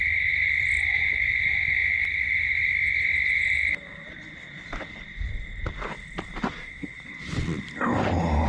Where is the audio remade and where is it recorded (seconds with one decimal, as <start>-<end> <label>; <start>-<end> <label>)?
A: 0.0-6.6 recorded; 6.6-7.3 remade; 7.3-8.5 recorded